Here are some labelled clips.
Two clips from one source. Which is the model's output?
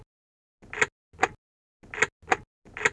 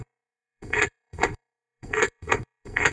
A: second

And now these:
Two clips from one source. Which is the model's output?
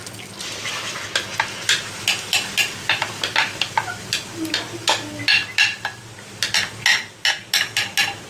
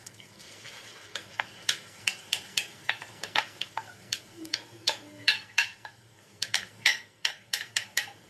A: second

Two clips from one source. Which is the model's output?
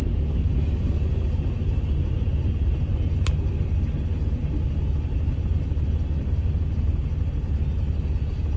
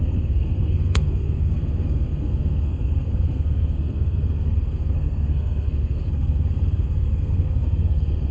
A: second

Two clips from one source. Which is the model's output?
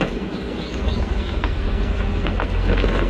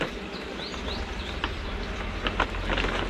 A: first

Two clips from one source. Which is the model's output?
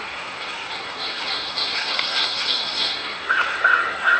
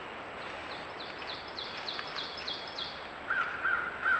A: first